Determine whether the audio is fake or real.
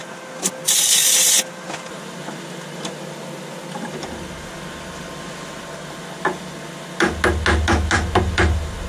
real